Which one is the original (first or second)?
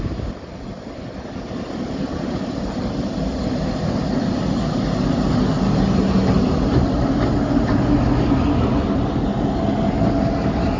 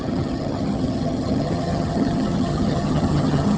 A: first